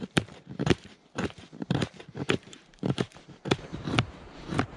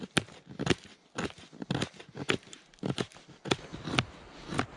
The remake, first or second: first